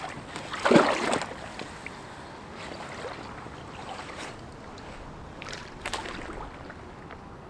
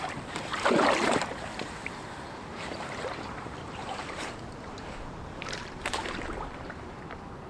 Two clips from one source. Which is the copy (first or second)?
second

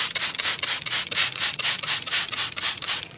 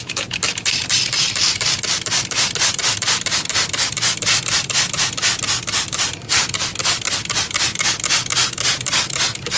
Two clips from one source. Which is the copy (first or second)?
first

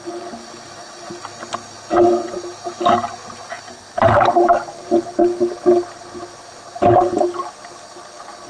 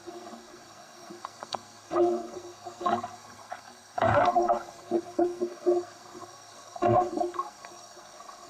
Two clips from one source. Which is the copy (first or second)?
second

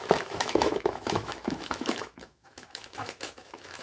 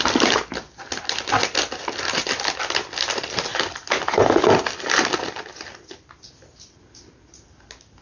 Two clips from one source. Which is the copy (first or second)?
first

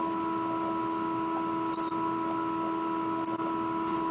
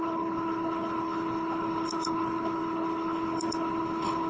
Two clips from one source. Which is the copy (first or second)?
second